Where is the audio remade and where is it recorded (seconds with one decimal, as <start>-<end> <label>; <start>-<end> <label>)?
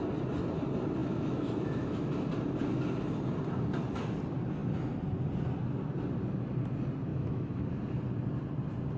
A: 0.0-1.0 recorded; 1.0-2.2 remade; 2.2-7.1 recorded; 7.1-7.7 remade; 7.7-9.0 recorded